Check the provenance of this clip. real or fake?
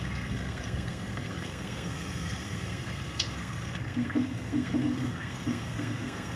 fake